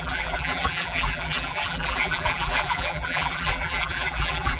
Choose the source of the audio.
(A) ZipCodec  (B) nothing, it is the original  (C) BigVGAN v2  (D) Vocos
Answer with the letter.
C